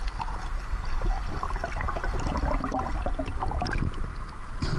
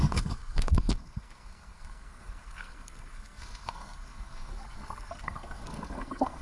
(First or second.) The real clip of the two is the first